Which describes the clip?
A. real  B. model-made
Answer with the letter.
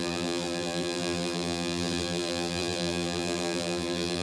B